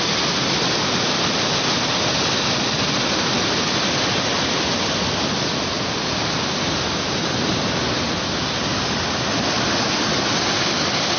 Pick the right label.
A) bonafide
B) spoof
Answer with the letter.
A